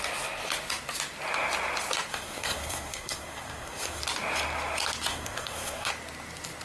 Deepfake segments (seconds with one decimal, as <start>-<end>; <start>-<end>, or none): 2.1-4.0; 5.1-5.9